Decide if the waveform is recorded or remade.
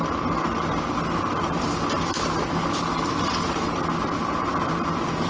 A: recorded